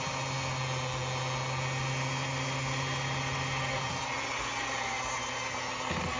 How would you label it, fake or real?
real